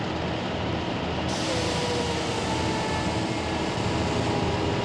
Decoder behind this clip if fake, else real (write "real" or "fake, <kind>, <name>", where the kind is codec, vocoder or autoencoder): real